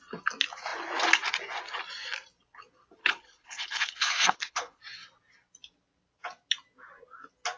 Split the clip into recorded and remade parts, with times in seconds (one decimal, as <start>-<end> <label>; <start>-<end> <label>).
0.0-3.0 recorded; 3.0-4.8 remade; 4.8-7.6 recorded